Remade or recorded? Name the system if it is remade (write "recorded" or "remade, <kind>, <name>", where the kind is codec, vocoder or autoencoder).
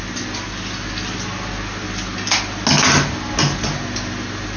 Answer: recorded